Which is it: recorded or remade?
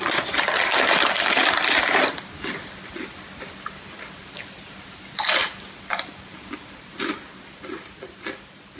recorded